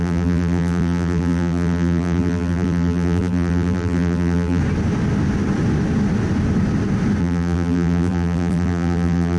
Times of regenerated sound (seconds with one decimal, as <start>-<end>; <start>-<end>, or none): 0.0-4.6; 7.2-9.4